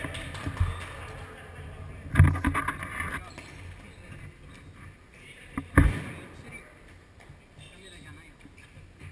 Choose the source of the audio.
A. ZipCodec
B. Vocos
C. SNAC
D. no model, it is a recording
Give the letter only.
D